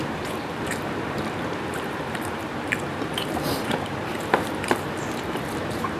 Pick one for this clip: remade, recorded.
remade